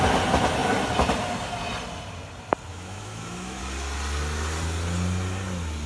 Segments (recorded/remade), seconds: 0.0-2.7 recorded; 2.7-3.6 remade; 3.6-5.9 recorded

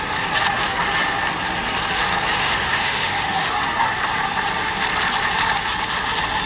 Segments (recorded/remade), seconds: 0.0-2.4 recorded; 2.4-3.5 remade; 3.5-6.5 recorded

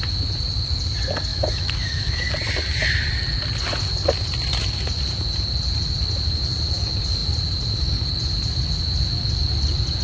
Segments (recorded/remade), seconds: 0.0-1.3 recorded; 1.3-2.3 remade; 2.3-10.0 recorded

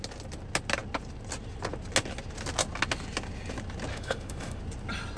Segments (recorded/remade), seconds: 0.0-3.9 recorded; 3.9-4.6 remade; 4.6-5.2 recorded

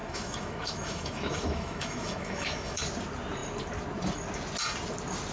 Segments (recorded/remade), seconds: 0.0-2.8 remade; 2.8-5.3 recorded

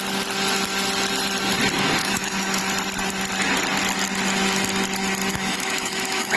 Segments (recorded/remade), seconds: 0.0-2.0 recorded; 2.0-2.6 remade; 2.6-5.3 recorded; 5.3-6.4 remade

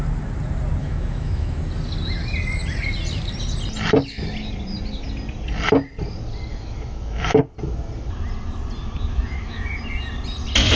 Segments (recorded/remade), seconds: 0.0-0.8 recorded; 0.8-1.6 remade; 1.6-6.5 recorded; 6.5-7.4 remade; 7.4-9.1 recorded; 9.1-9.8 remade; 9.8-10.8 recorded

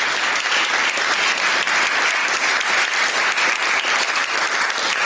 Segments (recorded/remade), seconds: 0.0-5.1 recorded